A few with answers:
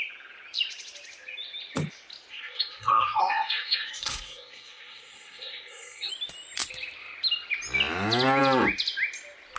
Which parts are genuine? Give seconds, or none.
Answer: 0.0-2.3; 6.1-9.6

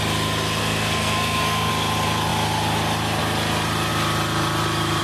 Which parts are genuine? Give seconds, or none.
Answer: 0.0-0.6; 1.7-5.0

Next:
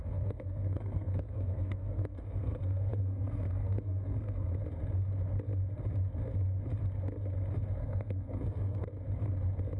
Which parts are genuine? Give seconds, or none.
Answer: 4.5-7.8; 8.9-9.8

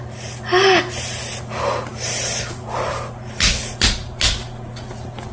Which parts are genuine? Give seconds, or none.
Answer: 0.0-5.3